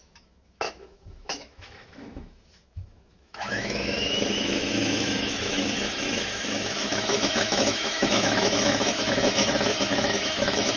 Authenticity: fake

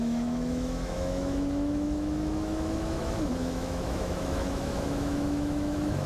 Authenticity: fake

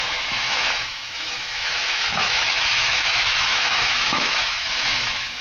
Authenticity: fake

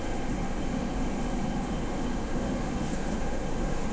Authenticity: fake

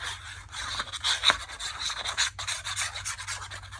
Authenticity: real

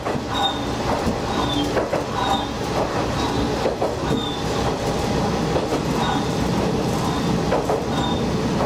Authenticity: real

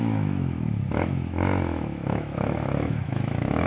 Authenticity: fake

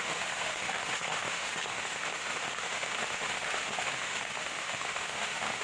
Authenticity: fake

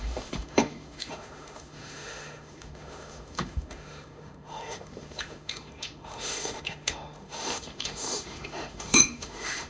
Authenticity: fake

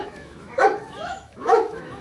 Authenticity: fake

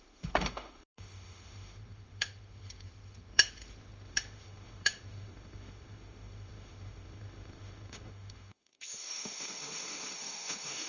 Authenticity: fake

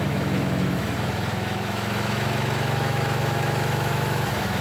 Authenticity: fake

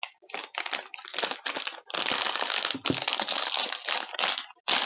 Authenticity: real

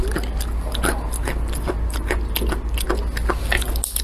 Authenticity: real